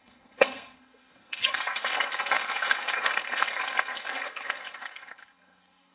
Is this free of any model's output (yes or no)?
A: no